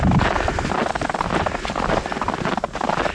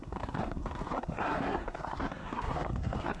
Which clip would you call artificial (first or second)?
second